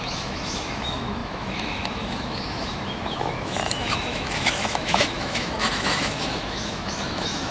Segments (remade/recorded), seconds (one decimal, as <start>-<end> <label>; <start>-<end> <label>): 0.0-7.5 remade